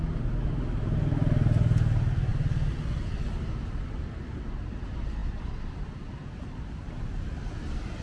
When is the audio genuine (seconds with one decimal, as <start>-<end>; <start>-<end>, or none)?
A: 0.0-8.0